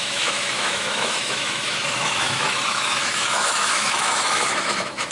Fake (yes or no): yes